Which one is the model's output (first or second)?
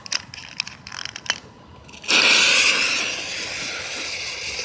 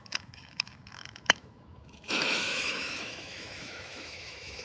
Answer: second